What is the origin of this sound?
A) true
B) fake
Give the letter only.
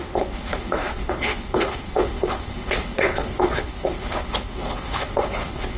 B